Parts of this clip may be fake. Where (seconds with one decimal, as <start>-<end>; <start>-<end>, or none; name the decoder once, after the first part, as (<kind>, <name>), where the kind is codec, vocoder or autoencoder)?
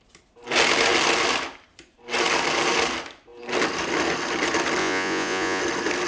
4.8-5.6 (vocoder, Vocos)